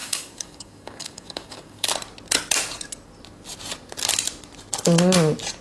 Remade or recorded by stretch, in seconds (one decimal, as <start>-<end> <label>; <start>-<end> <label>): 0.0-1.9 remade; 1.9-5.6 recorded